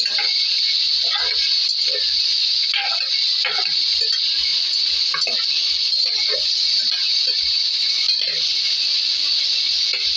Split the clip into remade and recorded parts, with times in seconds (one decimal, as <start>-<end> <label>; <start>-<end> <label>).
0.0-10.2 recorded